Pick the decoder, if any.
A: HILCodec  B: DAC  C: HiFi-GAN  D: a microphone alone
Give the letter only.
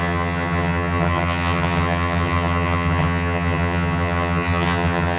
C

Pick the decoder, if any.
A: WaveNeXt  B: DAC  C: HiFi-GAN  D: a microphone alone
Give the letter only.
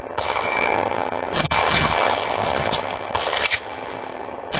C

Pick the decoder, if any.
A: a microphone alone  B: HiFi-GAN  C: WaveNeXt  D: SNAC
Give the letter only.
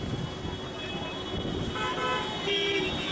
A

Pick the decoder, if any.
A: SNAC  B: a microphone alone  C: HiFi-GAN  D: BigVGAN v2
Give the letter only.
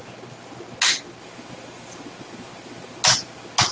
B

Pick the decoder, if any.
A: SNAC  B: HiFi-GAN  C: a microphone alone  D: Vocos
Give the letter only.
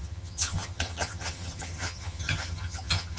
B